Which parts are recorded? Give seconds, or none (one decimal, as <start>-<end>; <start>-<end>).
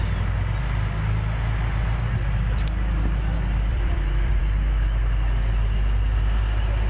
0.0-3.7; 4.4-6.9